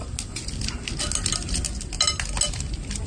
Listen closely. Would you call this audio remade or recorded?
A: recorded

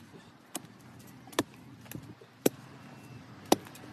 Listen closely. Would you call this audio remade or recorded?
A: recorded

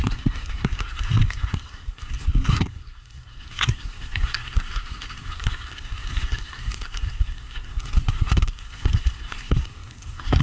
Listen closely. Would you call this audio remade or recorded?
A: remade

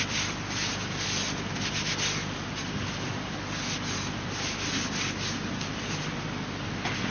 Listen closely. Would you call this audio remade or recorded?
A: recorded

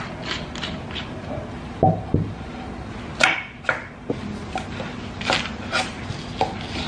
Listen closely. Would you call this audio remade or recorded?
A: recorded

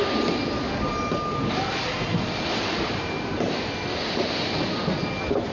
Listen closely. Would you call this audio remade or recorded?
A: recorded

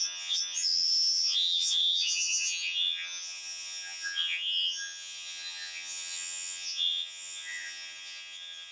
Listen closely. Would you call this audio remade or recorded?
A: remade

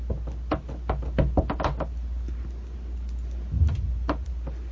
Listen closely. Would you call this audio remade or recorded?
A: recorded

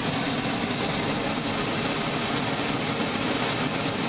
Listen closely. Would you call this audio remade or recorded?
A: recorded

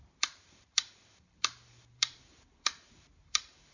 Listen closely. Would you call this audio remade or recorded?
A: remade